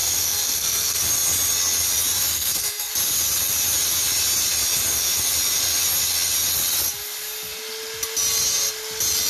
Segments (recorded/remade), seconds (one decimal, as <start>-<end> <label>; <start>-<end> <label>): 0.0-1.0 remade; 1.0-2.3 recorded; 2.3-2.9 remade; 2.9-9.3 recorded